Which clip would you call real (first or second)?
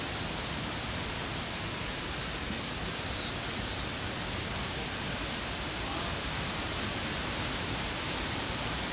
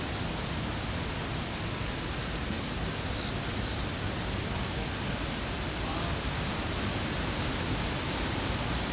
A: second